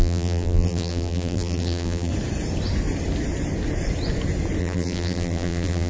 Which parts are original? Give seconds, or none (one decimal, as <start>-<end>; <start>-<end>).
2.1-4.6